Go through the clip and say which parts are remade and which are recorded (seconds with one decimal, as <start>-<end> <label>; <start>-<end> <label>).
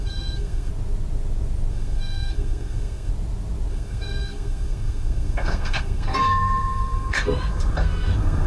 0.0-0.7 remade; 0.7-1.7 recorded; 1.7-3.1 remade; 3.1-3.7 recorded; 3.7-8.5 remade